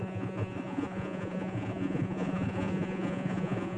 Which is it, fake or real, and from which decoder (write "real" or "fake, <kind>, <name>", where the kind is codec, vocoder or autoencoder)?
fake, vocoder, Vocos